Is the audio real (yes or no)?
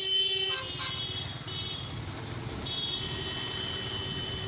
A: yes